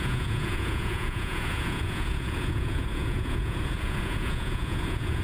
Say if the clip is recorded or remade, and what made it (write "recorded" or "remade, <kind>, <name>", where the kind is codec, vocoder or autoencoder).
remade, vocoder, Vocos